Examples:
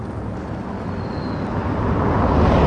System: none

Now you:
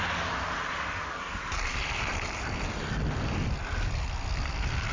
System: none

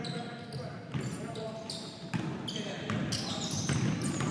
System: none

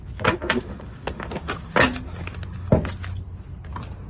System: none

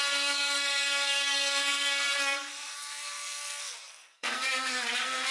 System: codec, SNAC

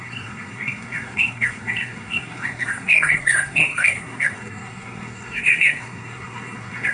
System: codec, SNAC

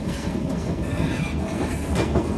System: codec, SNAC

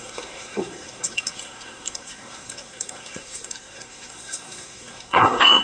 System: codec, SNAC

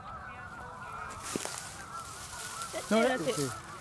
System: none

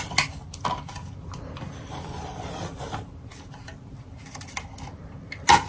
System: none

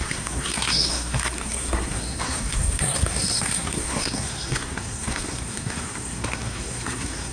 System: codec, SNAC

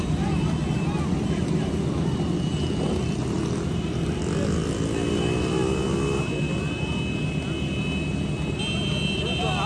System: none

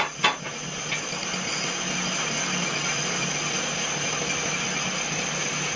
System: none